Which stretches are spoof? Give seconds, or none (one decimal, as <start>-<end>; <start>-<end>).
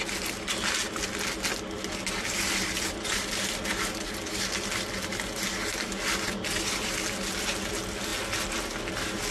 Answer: none